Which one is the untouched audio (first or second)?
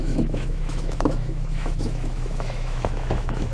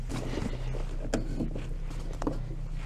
second